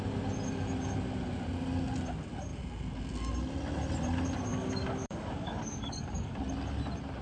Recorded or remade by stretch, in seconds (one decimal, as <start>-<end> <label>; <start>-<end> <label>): 0.0-4.5 recorded; 4.5-6.3 remade; 6.3-7.2 recorded